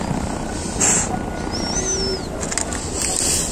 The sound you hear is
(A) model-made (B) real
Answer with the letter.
B